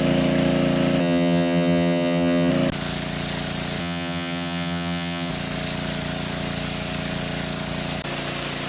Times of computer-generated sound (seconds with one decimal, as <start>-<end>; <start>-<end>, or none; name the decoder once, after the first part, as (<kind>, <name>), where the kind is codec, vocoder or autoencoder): 1.0-2.5 (vocoder, HiFi-GAN); 3.8-5.3